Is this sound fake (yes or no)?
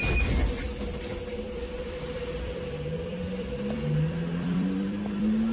yes